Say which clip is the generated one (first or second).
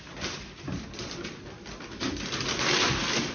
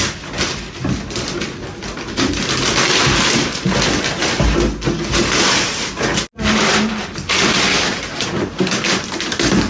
first